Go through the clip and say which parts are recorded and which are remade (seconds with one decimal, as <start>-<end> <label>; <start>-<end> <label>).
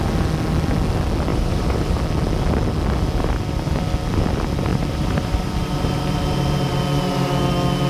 0.0-1.3 recorded; 1.3-2.0 remade; 2.0-4.7 recorded; 4.7-6.8 remade; 6.8-7.9 recorded